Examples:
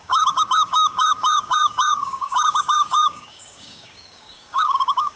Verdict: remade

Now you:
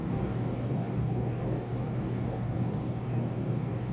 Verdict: remade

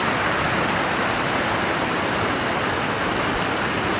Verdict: recorded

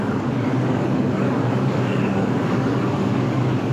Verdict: remade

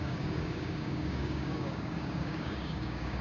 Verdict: remade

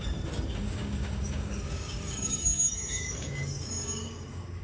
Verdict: remade